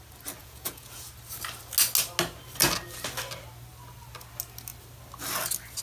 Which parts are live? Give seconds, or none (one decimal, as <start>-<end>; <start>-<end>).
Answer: 0.0-0.4; 1.1-5.8